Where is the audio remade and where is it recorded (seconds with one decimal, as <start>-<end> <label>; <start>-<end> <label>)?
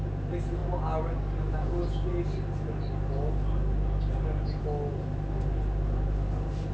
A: 0.0-6.7 recorded